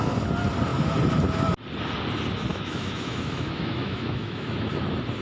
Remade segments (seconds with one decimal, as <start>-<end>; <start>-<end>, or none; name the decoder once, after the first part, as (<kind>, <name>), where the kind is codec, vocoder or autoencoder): 2.5-4.7 (autoencoder, DAC-VAE)